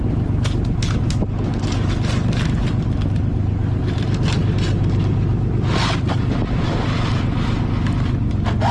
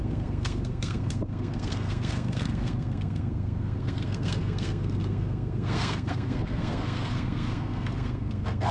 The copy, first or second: second